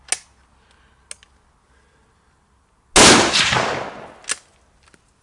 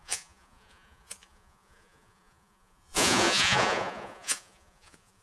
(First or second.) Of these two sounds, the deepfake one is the second